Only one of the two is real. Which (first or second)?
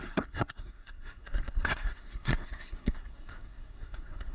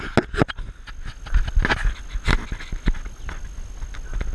second